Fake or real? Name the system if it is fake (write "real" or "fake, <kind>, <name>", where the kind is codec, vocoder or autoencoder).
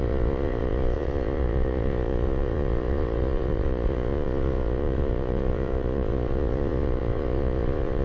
fake, vocoder, Vocos